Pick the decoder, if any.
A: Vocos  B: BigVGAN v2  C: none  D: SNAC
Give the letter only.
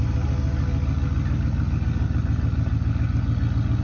C